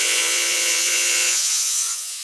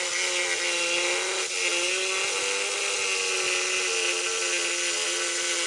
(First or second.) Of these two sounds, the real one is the second